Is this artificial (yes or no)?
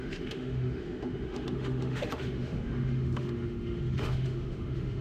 yes